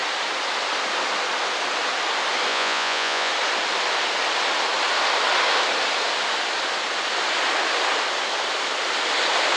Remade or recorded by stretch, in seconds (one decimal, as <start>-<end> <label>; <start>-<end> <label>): 0.0-2.5 recorded; 2.5-3.3 remade; 3.3-9.6 recorded